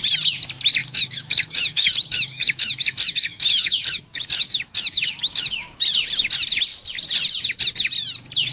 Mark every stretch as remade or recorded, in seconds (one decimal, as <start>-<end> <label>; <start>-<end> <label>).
0.0-0.8 recorded; 0.8-5.8 remade; 5.8-8.5 recorded